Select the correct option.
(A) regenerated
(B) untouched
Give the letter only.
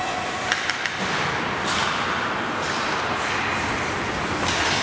B